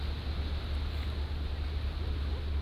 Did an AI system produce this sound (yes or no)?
no